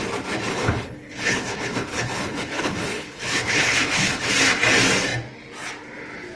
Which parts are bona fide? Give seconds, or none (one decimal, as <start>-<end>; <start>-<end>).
0.0-0.5; 4.3-6.4